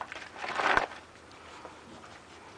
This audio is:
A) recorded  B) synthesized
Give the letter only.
A